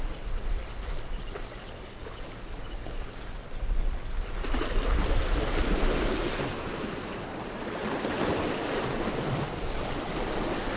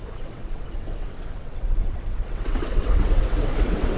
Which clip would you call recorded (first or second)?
first